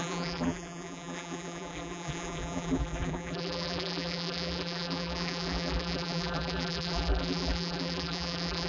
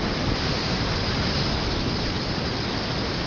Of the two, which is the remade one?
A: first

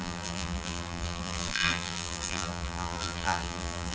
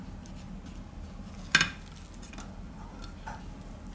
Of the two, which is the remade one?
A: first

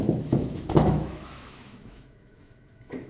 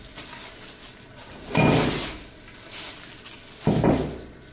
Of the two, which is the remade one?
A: first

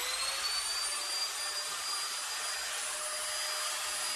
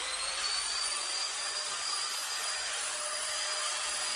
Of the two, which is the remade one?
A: second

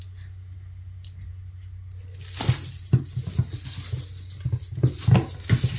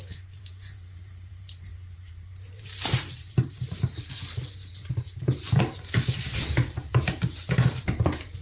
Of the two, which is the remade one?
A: second